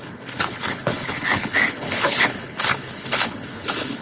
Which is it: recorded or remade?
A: remade